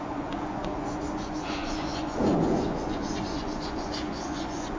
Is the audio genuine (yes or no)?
no